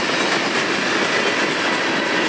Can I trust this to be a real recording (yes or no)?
yes